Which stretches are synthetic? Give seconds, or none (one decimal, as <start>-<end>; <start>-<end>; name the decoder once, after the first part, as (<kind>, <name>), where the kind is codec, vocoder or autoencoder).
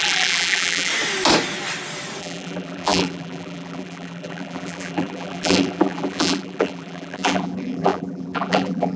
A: 0.0-0.9 (vocoder, BigVGAN v2); 2.2-9.0